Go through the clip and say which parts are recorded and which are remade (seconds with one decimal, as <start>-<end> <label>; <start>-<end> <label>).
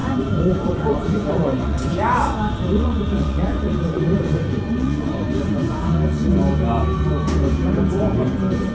0.0-2.2 remade; 2.2-2.7 recorded; 2.7-6.3 remade; 6.3-8.7 recorded